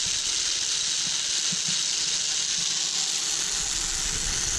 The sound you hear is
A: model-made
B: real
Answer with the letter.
B